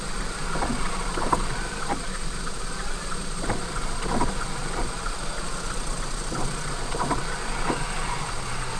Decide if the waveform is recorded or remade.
remade